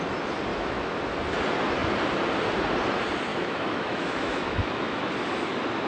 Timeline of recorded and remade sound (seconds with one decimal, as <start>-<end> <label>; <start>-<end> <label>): 0.0-0.5 recorded; 0.5-1.0 remade; 1.0-3.3 recorded; 3.3-5.1 remade; 5.1-5.9 recorded